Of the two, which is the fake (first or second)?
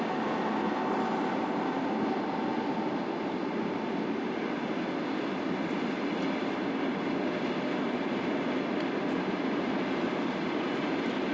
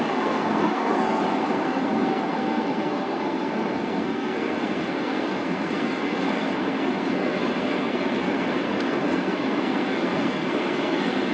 second